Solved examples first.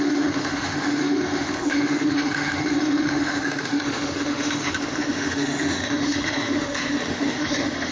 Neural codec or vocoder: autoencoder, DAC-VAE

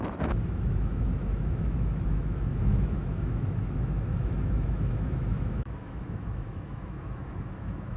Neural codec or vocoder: autoencoder, DAC-VAE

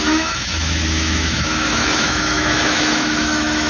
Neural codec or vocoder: autoencoder, DAC-VAE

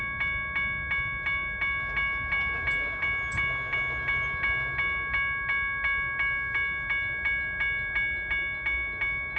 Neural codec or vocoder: none